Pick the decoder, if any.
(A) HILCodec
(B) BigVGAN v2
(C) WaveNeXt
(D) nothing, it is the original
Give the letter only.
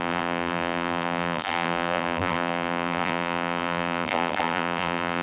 B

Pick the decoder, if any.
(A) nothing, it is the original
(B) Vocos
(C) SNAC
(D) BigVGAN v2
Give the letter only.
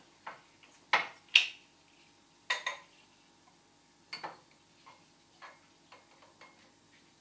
A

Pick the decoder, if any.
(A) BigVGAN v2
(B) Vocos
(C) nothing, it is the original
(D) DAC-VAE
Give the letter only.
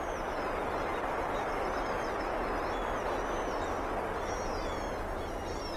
C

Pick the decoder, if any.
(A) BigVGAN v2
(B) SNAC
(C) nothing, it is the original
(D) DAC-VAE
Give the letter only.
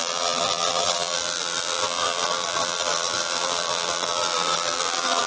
A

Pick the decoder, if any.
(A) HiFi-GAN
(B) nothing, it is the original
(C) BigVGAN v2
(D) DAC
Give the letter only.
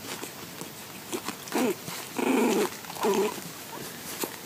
B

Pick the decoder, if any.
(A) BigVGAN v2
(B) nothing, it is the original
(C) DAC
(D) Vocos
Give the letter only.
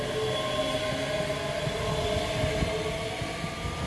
B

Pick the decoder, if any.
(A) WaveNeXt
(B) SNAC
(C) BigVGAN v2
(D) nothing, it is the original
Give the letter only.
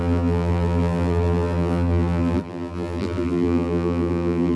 C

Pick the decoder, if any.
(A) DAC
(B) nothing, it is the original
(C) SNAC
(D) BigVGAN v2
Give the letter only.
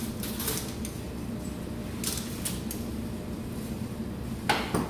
B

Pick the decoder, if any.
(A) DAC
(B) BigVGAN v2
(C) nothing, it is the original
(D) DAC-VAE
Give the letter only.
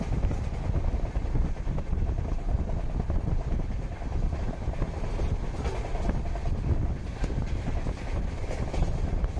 C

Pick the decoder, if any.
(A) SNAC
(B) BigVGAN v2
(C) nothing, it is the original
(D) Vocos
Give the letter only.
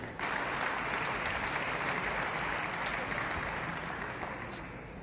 C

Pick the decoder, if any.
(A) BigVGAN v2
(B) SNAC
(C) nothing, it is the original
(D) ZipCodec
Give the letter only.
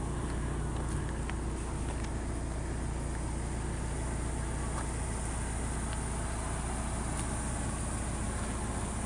C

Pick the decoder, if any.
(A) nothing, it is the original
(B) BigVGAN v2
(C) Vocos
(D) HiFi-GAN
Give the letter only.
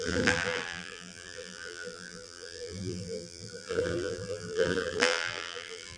B